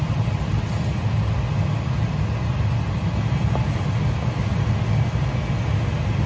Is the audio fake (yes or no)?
no